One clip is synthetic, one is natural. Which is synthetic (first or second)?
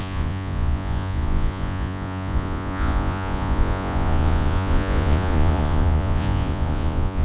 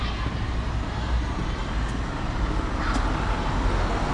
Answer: first